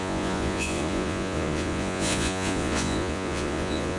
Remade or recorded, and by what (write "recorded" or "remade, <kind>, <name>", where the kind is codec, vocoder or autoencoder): remade, vocoder, Vocos